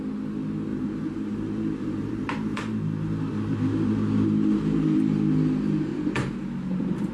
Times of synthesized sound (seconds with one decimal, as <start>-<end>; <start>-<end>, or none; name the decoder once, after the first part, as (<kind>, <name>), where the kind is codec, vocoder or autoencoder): 0.7-5.0 (vocoder, BigVGAN v2)